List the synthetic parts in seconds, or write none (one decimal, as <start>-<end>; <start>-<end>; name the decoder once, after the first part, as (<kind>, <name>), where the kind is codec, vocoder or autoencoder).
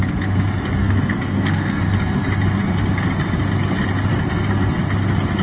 0.8-1.8 (codec, SNAC); 4.1-4.7